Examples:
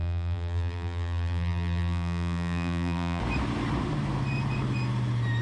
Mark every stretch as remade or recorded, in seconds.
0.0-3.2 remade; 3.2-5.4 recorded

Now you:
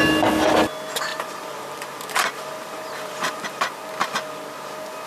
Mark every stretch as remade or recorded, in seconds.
0.0-1.1 recorded; 1.1-3.8 remade; 3.8-5.1 recorded

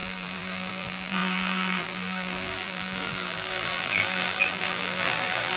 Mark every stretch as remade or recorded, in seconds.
0.0-5.6 remade